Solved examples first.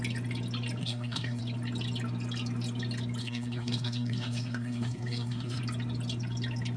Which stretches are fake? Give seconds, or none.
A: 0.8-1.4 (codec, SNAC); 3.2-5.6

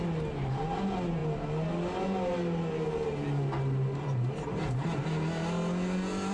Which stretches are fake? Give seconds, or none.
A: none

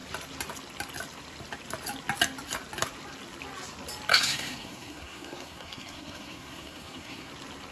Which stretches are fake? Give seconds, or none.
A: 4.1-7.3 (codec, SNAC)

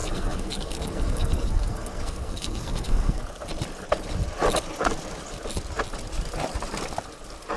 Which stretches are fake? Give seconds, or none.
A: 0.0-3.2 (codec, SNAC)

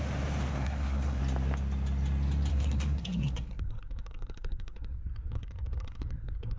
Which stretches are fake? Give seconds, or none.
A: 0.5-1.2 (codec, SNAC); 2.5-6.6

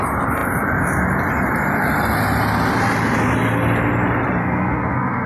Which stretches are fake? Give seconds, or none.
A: 4.4-5.3 (codec, SNAC)